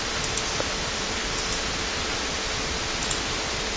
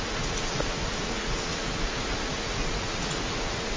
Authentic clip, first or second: first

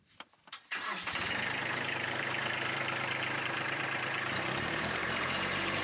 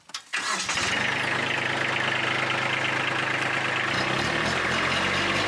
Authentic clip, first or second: second